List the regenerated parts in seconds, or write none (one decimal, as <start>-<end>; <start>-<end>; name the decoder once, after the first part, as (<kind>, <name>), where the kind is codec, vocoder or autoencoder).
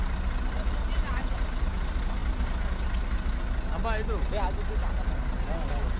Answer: none